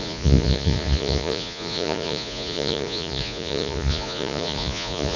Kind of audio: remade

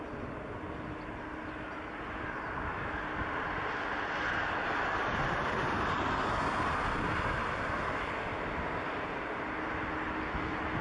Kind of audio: recorded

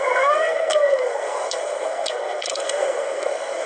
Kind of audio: remade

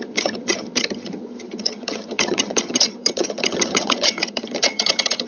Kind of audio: remade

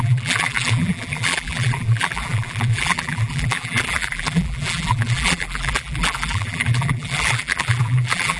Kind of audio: remade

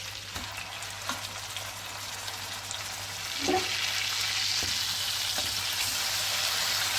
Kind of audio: recorded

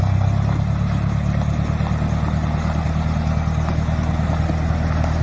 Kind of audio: recorded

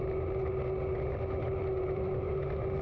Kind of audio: recorded